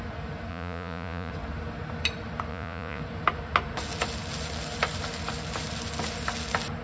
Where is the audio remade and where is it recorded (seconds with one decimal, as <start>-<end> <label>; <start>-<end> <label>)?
0.0-0.5 recorded; 0.5-1.3 remade; 1.3-2.5 recorded; 2.5-3.0 remade; 3.0-6.8 recorded